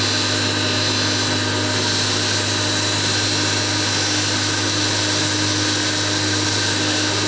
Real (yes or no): yes